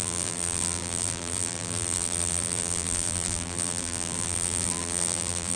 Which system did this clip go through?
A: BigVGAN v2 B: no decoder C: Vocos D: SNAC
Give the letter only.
A